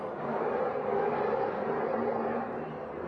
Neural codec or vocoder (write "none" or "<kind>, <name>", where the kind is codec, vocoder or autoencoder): none